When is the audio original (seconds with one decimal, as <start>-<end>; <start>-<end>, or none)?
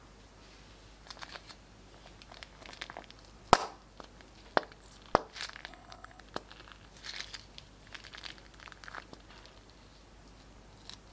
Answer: 0.0-5.7; 6.2-11.1